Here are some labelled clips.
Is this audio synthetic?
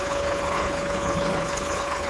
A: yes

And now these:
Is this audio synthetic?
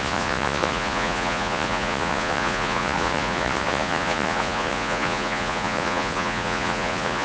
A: yes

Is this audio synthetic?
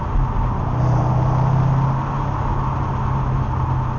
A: no